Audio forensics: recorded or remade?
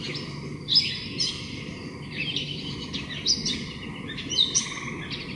remade